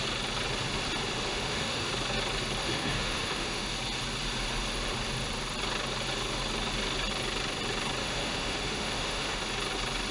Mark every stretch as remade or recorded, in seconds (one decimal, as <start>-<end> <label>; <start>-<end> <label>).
0.0-1.3 recorded; 1.3-1.9 remade; 1.9-2.6 recorded; 2.6-3.7 remade; 3.7-8.0 recorded; 8.0-9.4 remade; 9.4-10.1 recorded